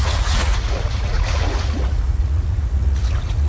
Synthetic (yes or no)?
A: yes